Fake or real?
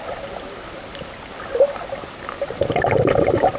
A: real